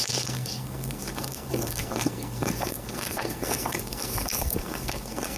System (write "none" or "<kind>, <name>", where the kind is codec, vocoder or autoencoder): codec, SNAC